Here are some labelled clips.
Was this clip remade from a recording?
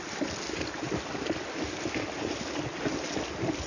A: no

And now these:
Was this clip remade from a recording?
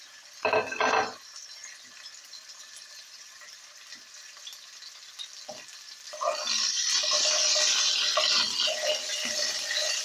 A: no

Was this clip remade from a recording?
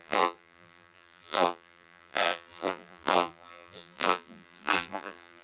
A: yes